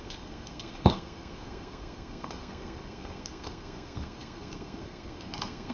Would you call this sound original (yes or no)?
no